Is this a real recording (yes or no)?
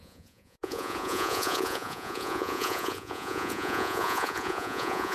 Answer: no